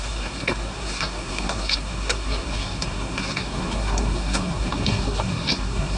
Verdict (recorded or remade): remade